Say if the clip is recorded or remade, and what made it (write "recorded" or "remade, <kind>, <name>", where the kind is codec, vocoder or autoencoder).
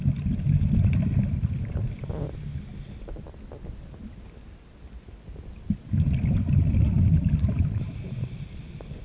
recorded